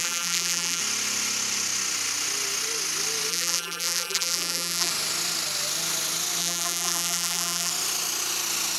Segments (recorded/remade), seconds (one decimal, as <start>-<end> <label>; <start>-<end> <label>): 0.0-0.8 remade; 0.8-3.3 recorded; 3.3-4.9 remade; 4.9-6.4 recorded; 6.4-7.7 remade; 7.7-8.8 recorded